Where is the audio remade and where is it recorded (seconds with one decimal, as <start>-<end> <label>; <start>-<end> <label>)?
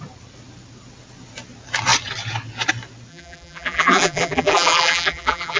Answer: 0.0-3.1 recorded; 3.1-5.6 remade